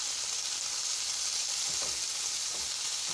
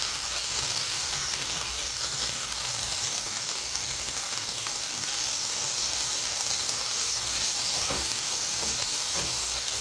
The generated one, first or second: second